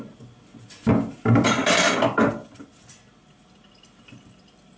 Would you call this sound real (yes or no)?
yes